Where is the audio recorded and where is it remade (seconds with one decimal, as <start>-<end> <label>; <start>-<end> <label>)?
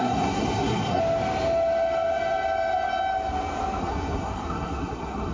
0.0-1.0 remade; 1.0-3.8 recorded; 3.8-5.3 remade